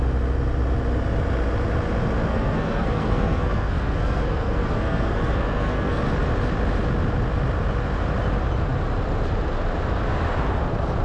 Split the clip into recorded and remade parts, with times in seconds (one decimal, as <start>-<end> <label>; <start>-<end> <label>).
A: 0.0-2.3 recorded; 2.3-6.0 remade; 6.0-11.0 recorded

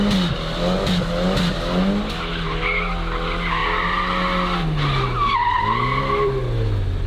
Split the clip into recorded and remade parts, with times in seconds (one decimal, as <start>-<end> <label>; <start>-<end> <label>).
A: 0.0-7.1 recorded

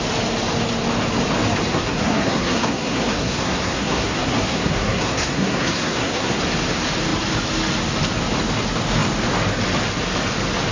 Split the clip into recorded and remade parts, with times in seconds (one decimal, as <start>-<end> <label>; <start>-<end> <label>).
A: 0.0-1.7 recorded; 1.7-6.4 remade; 6.4-10.7 recorded

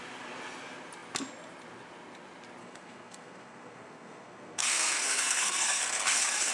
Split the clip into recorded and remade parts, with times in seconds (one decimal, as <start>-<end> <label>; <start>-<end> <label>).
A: 0.0-2.6 recorded; 2.6-6.5 remade

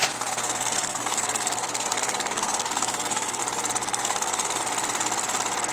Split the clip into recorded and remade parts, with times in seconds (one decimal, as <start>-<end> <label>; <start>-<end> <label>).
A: 0.0-3.4 remade; 3.4-3.8 recorded; 3.8-4.6 remade; 4.6-5.7 recorded

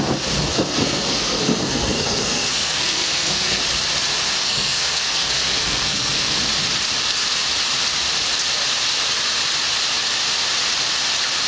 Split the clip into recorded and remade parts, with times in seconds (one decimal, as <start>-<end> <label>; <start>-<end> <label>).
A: 0.0-0.5 recorded; 0.5-3.6 remade; 3.6-4.4 recorded; 4.4-6.4 remade; 6.4-11.5 recorded

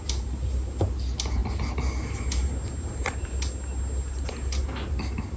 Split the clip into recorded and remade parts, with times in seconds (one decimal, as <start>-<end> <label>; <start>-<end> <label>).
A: 0.0-5.4 recorded